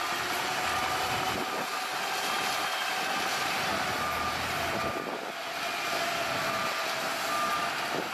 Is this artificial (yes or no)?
no